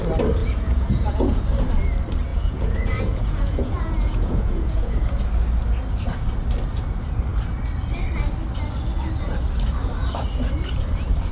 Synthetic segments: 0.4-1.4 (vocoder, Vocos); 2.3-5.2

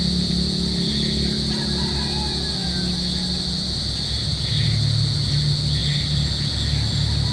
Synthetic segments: none

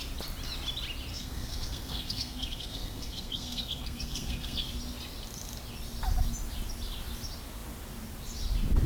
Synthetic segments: 1.1-4.7 (codec, SNAC)

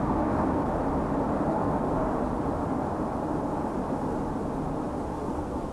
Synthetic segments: 0.0-0.7 (codec, SNAC); 1.5-2.0; 5.1-5.7